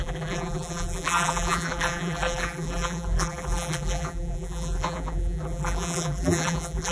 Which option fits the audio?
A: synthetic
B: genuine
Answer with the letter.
A